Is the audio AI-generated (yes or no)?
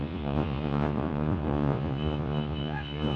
yes